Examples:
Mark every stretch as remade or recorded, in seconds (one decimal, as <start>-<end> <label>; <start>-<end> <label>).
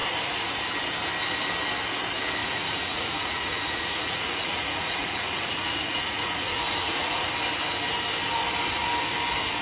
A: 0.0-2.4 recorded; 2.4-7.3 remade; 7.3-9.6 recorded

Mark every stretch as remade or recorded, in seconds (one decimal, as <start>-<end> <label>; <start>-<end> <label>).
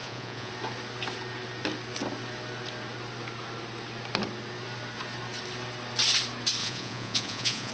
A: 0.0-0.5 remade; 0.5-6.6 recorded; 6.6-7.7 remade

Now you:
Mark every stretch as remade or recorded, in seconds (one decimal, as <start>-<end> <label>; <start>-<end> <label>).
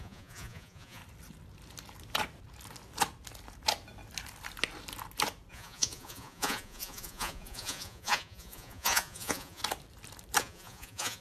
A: 0.0-1.0 remade; 1.0-5.5 recorded; 5.5-9.6 remade; 9.6-10.4 recorded; 10.4-11.2 remade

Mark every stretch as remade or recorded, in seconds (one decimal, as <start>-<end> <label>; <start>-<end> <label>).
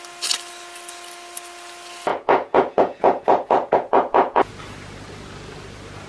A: 0.0-2.1 recorded; 2.1-4.5 remade; 4.5-6.1 recorded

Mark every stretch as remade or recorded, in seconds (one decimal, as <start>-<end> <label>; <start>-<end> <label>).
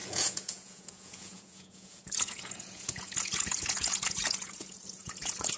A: 0.0-5.6 remade